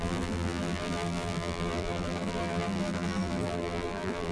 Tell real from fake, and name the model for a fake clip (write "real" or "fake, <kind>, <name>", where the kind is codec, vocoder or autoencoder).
fake, vocoder, BigVGAN v2